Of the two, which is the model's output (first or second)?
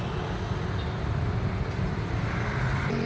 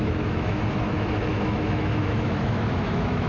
second